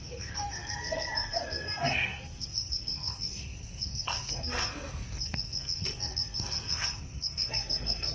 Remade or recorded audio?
remade